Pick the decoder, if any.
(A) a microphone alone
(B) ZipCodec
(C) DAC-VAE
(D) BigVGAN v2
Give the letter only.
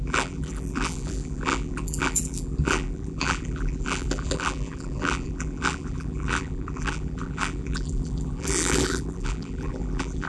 D